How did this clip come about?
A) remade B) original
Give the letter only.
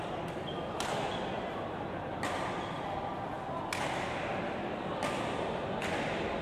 B